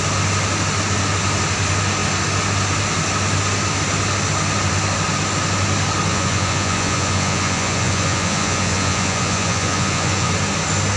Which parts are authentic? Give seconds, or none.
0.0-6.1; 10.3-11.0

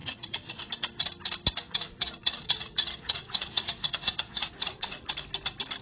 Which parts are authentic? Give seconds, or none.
0.6-1.6; 5.1-5.8

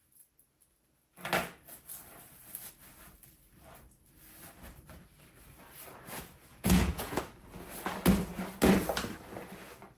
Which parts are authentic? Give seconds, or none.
0.0-6.5; 7.2-10.0

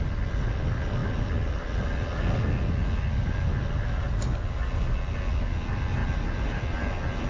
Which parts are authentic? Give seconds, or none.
0.0-7.3

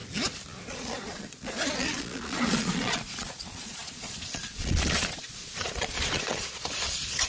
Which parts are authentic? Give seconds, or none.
0.0-0.7

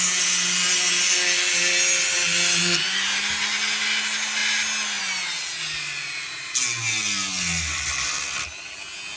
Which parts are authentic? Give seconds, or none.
0.0-9.2

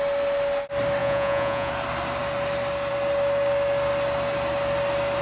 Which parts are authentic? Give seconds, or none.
0.0-1.0; 1.7-5.2